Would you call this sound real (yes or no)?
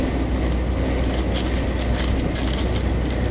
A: yes